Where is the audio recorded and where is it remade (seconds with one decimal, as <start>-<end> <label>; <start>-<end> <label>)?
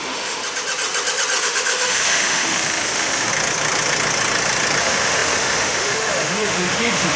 0.0-0.4 remade; 0.4-1.4 recorded; 1.4-3.3 remade; 3.3-4.8 recorded; 4.8-7.2 remade